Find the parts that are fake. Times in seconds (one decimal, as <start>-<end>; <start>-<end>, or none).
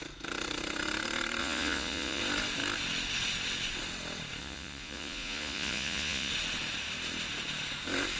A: 1.4-2.2; 4.4-6.3